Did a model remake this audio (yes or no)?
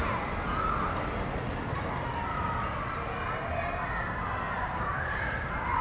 no